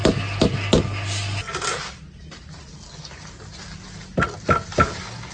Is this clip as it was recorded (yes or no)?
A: yes